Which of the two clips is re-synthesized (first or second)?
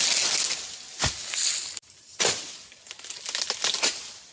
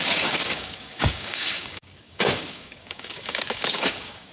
second